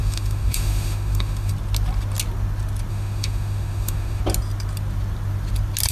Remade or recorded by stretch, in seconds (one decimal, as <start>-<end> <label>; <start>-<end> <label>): 0.0-1.5 remade; 1.5-2.9 recorded; 2.9-4.2 remade; 4.2-5.9 recorded